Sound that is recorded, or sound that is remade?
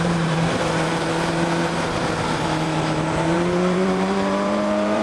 remade